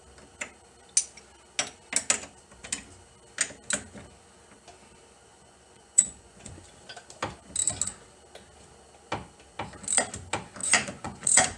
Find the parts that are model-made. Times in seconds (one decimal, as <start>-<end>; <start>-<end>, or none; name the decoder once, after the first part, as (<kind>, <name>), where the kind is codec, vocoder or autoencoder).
5.3-6.5 (vocoder, Vocos); 10.6-11.6